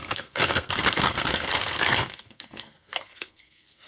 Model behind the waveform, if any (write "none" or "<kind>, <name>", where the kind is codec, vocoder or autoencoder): codec, SNAC